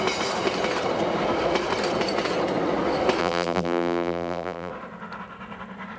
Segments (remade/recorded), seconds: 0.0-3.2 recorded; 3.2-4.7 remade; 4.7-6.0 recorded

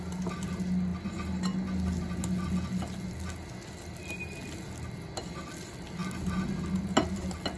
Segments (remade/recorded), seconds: 0.0-7.6 recorded

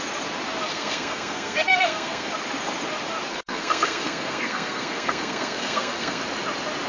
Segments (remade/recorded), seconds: 0.0-0.7 recorded; 0.7-2.3 remade; 2.3-3.3 recorded; 3.3-6.2 remade; 6.2-6.9 recorded

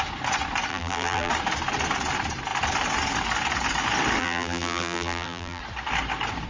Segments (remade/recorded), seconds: 0.0-0.7 recorded; 0.7-1.3 remade; 1.3-4.2 recorded; 4.2-5.6 remade; 5.6-6.5 recorded